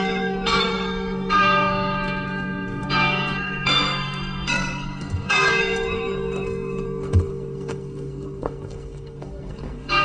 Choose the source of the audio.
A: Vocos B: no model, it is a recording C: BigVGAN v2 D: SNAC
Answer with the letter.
D